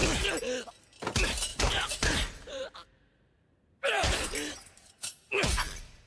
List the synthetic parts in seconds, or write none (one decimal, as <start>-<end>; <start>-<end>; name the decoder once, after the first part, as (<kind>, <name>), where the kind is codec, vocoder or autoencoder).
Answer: 1.5-4.9 (vocoder, BigVGAN v2)